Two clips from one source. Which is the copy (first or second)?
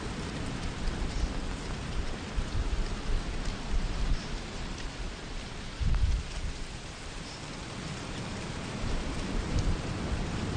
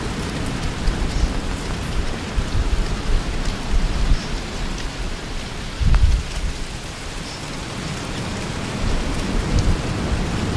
first